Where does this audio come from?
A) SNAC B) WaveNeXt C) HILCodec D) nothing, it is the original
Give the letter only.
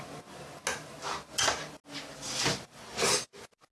D